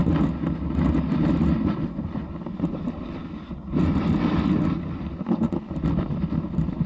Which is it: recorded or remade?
recorded